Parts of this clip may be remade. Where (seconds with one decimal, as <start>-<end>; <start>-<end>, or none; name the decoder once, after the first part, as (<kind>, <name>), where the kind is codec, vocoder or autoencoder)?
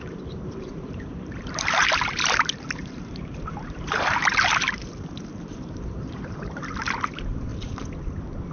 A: 0.0-7.5 (vocoder, BigVGAN v2)